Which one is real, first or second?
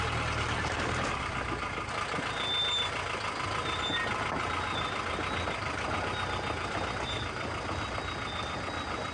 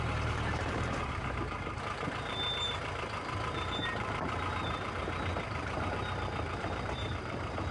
first